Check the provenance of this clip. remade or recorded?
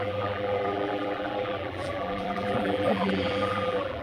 remade